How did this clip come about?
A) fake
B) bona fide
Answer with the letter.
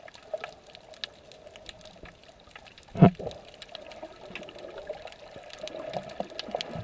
B